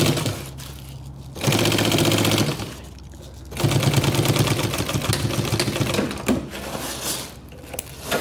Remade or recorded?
recorded